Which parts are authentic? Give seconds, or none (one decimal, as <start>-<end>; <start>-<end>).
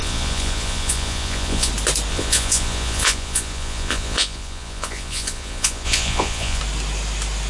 1.7-2.1; 6.6-7.5